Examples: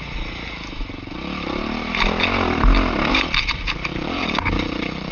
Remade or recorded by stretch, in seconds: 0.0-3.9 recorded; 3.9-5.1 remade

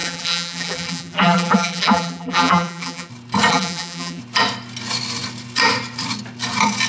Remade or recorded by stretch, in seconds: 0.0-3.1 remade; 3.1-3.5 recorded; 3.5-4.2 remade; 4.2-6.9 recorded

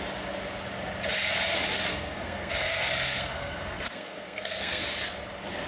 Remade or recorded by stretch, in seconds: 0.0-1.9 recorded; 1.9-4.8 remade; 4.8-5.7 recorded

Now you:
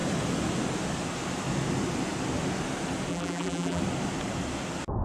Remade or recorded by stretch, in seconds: 0.0-3.1 recorded; 3.1-3.8 remade; 3.8-5.0 recorded

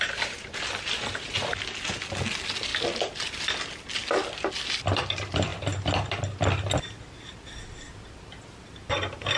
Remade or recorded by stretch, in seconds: 0.0-9.4 recorded